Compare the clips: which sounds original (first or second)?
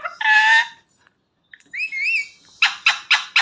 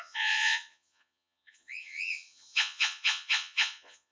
first